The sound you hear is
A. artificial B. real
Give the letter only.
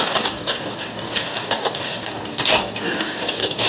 A